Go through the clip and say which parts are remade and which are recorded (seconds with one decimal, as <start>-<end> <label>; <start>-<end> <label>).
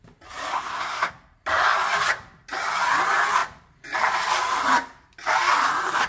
0.0-0.5 recorded; 0.5-1.1 remade; 1.1-6.1 recorded